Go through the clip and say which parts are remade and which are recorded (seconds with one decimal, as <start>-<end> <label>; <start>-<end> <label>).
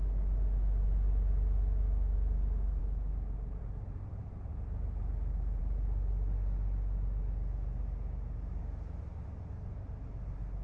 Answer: 0.0-10.6 recorded